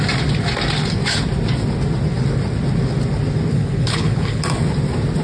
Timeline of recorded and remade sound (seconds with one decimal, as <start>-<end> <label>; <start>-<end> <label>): 0.0-3.5 recorded; 3.5-4.4 remade; 4.4-5.2 recorded